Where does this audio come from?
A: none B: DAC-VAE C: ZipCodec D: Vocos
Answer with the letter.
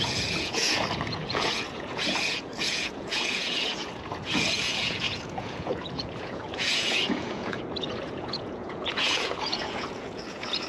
D